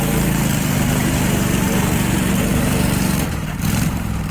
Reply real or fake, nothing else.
fake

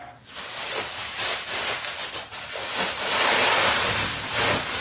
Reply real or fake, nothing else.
real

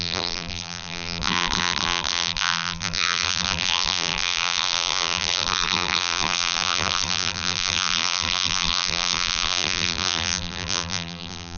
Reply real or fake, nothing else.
fake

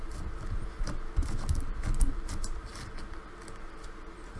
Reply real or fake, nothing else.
real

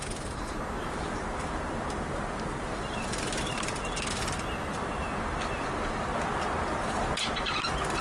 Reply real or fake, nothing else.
fake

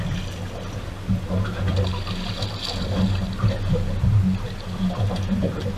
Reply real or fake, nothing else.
real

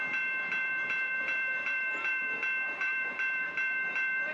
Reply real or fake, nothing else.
fake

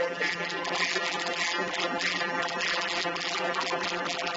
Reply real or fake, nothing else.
fake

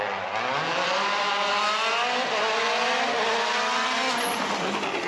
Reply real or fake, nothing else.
real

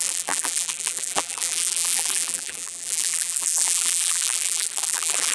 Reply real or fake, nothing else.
fake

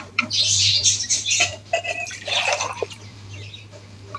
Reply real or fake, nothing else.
fake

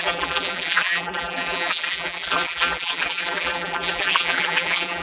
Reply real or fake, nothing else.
fake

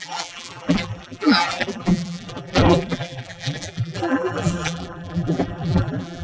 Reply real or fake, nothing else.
fake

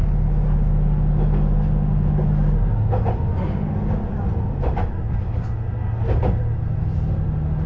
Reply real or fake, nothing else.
real